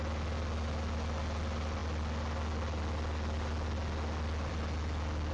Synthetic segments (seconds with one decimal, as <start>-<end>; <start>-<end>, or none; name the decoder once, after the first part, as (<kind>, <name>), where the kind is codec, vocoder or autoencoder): none